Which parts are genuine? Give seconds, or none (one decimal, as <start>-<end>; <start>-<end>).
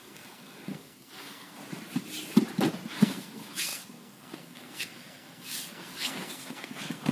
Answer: 1.6-2.9